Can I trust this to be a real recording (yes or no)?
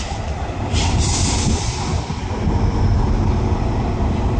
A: yes